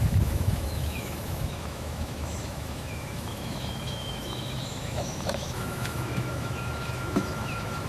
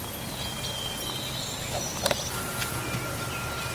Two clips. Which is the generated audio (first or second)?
first